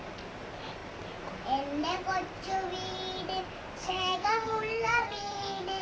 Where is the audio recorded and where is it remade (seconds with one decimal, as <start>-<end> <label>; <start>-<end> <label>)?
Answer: 0.0-3.8 recorded; 3.8-5.8 remade